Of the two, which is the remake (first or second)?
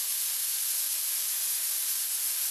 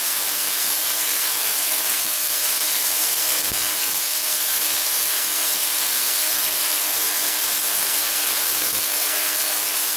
second